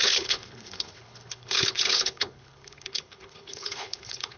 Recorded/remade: remade